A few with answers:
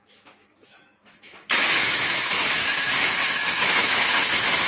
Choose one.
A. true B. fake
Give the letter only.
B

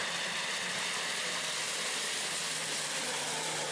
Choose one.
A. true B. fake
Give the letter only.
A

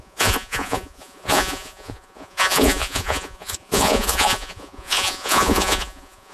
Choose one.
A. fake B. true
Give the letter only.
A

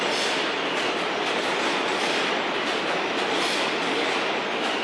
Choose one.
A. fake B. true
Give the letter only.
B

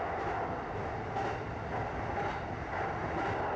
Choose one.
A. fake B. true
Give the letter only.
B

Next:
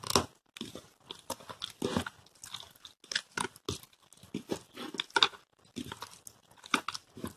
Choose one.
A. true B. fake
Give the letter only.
A